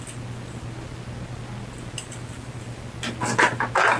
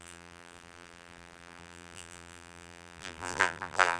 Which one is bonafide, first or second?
first